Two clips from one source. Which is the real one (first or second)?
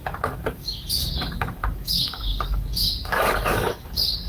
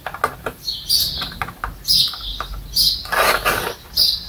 second